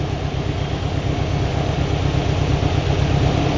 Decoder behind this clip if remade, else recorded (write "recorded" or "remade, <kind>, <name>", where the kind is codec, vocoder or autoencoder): recorded